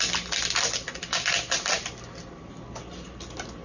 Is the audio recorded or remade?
recorded